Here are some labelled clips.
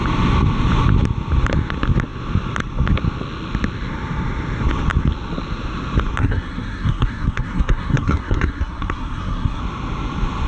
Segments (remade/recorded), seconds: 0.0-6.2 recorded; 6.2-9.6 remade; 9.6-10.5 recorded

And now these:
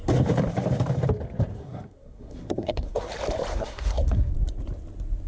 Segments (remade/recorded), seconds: 0.0-1.5 recorded; 1.5-3.1 remade; 3.1-3.5 recorded; 3.5-4.3 remade; 4.3-5.3 recorded

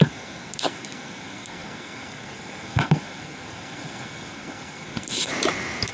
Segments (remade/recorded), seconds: 0.0-5.3 remade; 5.3-5.9 recorded

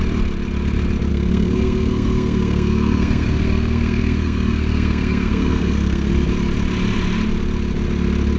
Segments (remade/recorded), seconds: 0.0-1.1 recorded; 1.1-6.1 remade; 6.1-8.4 recorded

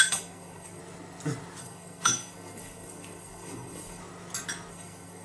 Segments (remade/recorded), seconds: 0.0-0.8 remade; 0.8-1.6 recorded; 1.6-4.0 remade; 4.0-4.7 recorded; 4.7-5.2 remade